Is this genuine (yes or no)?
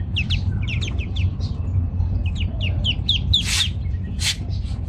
no